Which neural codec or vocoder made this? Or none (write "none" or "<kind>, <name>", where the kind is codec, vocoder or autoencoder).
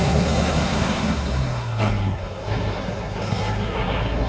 codec, SNAC